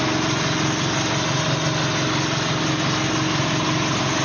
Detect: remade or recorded recorded